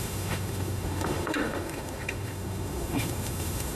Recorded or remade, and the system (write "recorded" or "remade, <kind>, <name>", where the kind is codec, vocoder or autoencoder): remade, autoencoder, DAC-VAE